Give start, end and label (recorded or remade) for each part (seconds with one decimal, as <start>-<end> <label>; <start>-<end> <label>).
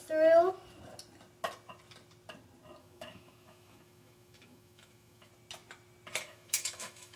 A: 0.0-2.8 recorded; 2.8-5.3 remade; 5.3-6.2 recorded; 6.2-7.2 remade